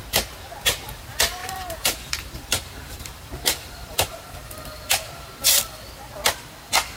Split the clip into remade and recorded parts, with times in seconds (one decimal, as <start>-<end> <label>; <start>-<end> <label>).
0.0-1.4 recorded; 1.4-5.6 remade; 5.6-7.0 recorded